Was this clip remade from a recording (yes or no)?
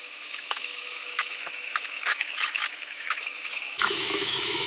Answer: yes